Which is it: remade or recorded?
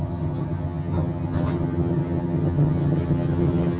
remade